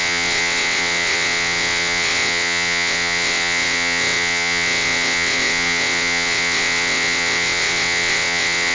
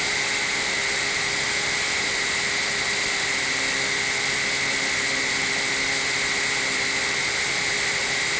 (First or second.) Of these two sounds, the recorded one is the second